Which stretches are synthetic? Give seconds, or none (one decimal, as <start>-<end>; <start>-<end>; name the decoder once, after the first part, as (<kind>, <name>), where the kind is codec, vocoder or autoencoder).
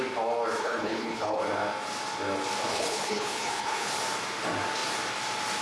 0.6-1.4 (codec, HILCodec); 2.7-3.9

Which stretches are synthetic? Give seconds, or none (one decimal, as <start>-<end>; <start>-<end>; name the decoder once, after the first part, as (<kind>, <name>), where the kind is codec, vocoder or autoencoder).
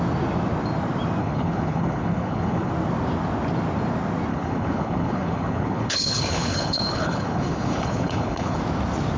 1.2-2.7 (codec, HILCodec); 4.3-8.6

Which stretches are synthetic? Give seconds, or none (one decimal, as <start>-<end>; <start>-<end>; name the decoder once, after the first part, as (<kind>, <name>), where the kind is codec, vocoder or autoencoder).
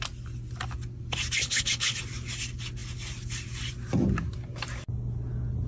1.4-2.0 (codec, HILCodec)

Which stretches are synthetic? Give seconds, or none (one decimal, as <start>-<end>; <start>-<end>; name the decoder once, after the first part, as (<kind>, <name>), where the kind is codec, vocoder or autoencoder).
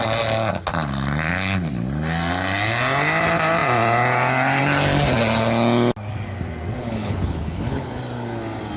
6.8-8.0 (codec, HILCodec)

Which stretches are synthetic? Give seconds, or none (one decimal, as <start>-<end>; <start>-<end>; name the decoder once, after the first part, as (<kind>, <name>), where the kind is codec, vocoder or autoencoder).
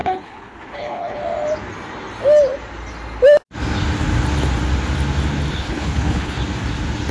0.0-1.2 (codec, HILCodec); 5.5-6.4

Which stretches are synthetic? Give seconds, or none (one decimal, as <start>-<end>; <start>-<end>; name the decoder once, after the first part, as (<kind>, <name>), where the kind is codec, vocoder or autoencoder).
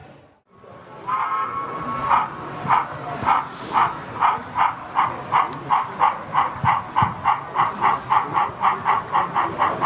none